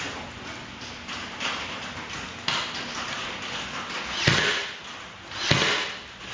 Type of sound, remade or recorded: recorded